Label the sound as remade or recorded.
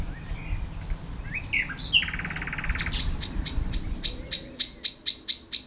recorded